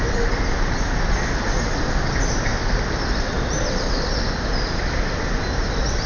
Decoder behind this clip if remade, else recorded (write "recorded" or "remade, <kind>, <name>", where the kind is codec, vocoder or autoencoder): recorded